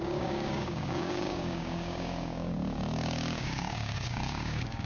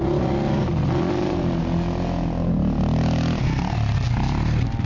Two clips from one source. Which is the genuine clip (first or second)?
second